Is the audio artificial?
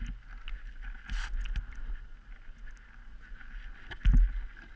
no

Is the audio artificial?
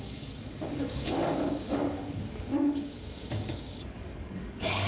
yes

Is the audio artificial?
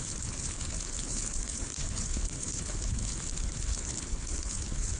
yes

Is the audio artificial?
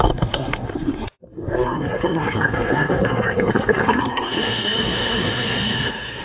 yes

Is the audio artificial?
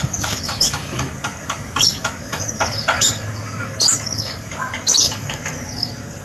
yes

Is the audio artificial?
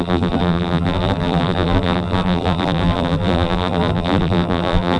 yes